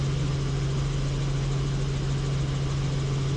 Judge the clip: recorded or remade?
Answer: recorded